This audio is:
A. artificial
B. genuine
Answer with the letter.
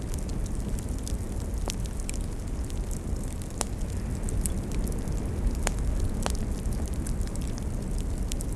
B